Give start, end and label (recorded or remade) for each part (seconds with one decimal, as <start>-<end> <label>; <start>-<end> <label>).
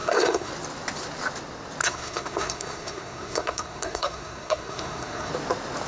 0.0-0.5 remade; 0.5-1.8 recorded; 1.8-5.3 remade; 5.3-5.9 recorded